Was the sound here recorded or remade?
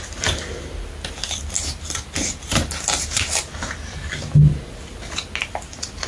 recorded